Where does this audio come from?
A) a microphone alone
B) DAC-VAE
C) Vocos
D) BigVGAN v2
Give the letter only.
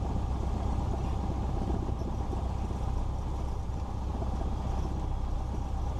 A